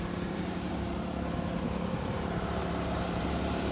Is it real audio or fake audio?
fake